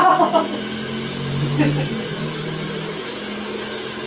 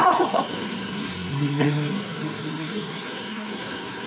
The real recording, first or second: first